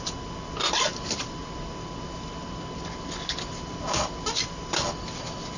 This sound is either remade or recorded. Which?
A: remade